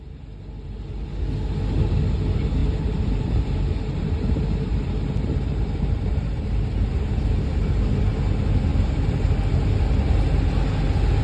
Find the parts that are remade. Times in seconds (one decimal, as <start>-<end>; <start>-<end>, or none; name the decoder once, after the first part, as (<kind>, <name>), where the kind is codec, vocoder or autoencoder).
2.6-7.8 (vocoder, BigVGAN v2)